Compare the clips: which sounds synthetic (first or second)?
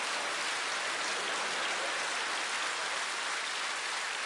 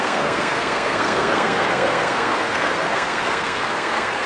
second